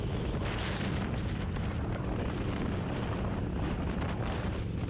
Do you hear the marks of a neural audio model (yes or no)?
yes